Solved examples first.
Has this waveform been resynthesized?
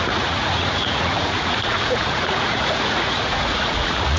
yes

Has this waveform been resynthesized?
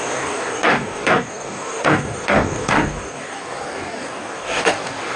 yes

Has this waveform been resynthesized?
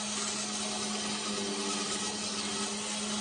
no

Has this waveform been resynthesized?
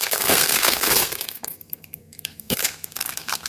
yes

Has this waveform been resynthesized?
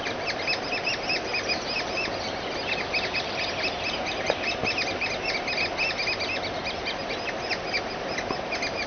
no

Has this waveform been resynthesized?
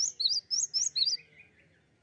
no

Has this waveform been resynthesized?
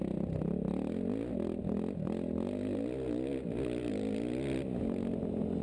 no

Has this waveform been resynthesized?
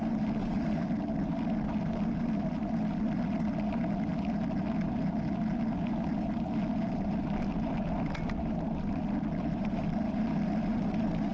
no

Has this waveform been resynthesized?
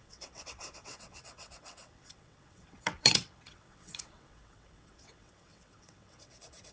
yes